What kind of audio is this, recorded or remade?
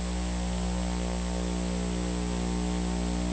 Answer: recorded